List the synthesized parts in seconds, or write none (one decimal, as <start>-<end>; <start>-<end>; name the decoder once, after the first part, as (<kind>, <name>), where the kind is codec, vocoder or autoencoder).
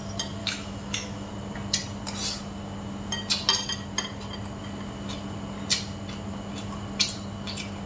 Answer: 0.4-1.3 (autoencoder, DAC-VAE)